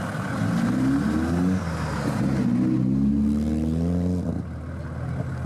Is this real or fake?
real